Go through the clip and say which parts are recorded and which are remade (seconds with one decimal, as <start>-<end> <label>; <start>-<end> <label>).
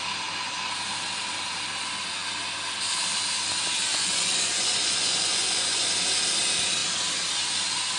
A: 0.0-3.9 recorded; 3.9-5.9 remade; 5.9-8.0 recorded